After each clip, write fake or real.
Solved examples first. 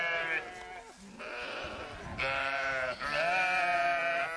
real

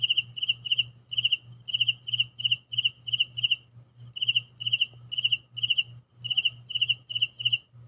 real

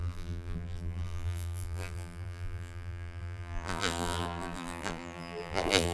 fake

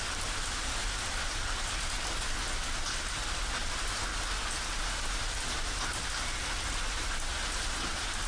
real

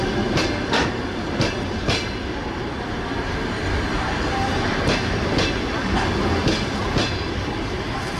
real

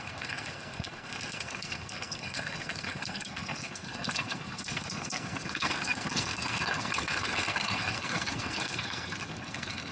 fake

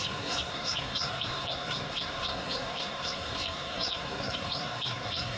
fake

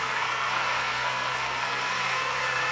fake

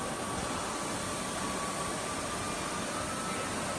real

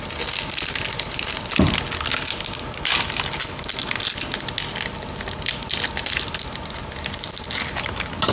real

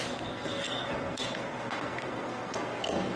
fake